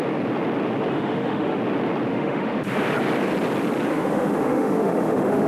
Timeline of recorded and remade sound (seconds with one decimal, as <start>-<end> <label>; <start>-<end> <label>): 0.0-0.9 recorded; 0.9-1.6 remade; 1.6-2.1 recorded; 2.1-2.6 remade; 2.6-3.9 recorded; 3.9-5.5 remade